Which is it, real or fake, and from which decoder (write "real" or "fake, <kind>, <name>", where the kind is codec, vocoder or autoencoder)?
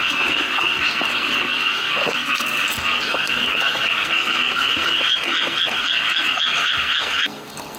fake, codec, SNAC